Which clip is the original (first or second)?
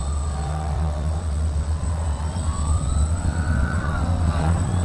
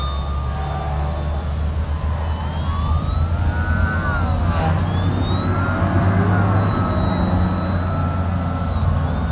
second